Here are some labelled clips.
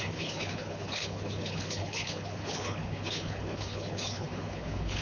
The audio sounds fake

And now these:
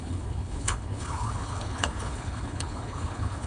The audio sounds fake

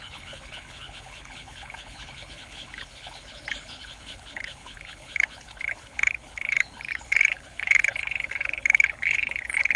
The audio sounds fake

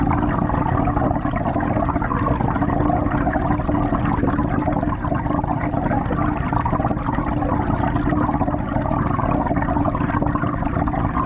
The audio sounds real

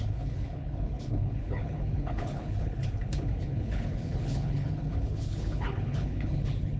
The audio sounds fake